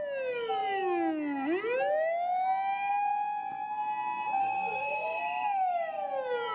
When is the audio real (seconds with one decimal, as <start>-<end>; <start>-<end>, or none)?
0.0-4.4; 5.2-6.5